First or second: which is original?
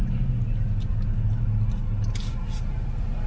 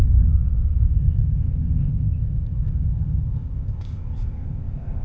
first